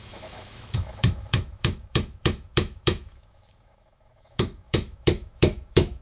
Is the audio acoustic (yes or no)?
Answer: no